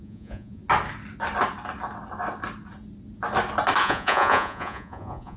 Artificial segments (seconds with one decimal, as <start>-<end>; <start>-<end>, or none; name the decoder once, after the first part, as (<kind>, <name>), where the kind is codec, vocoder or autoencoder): 0.0-0.6 (vocoder, Vocos); 3.8-5.4

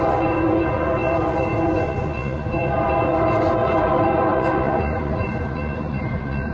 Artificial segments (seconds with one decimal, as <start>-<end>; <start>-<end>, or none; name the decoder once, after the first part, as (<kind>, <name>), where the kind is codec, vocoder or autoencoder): 0.0-6.5 (vocoder, Vocos)

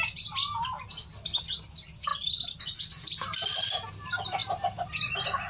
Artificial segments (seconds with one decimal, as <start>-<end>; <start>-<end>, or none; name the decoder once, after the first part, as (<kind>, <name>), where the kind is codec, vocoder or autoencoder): none

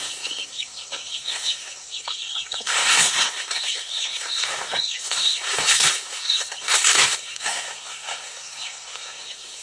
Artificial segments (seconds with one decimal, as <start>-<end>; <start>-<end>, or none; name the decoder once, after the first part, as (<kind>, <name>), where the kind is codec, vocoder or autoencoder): 0.0-9.6 (codec, SNAC)